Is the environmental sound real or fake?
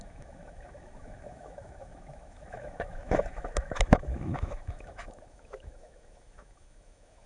fake